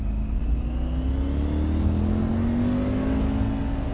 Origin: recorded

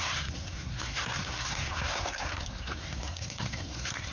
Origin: remade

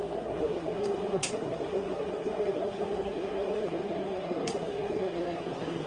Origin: remade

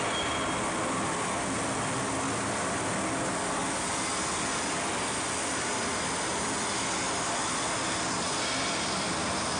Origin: recorded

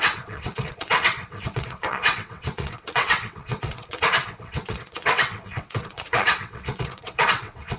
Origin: remade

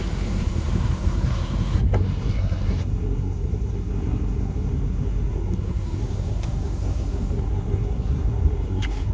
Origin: remade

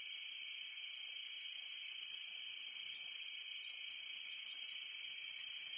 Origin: recorded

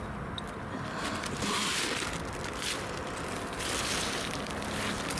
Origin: recorded